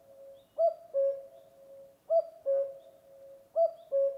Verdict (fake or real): real